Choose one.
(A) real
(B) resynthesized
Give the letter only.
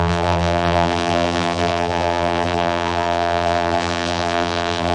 B